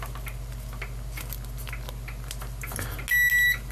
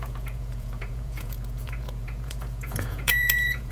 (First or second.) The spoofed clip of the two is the second